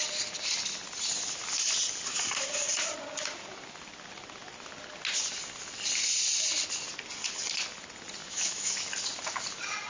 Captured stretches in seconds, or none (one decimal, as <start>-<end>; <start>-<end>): 0.0-8.2; 8.8-9.9